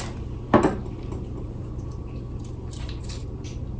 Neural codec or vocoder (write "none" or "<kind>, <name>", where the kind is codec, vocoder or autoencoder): none